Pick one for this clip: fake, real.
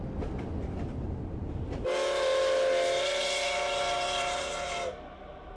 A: real